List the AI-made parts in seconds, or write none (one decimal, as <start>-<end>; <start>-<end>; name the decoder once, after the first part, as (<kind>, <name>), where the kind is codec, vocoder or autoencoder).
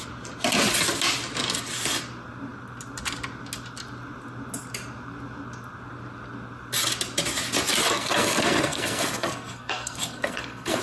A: 7.8-10.8 (codec, SNAC)